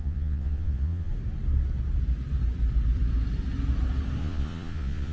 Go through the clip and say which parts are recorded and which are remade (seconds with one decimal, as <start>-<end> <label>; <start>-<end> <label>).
0.0-1.1 remade; 1.1-4.2 recorded; 4.2-5.1 remade